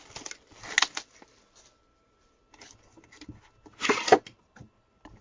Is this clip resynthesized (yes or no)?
no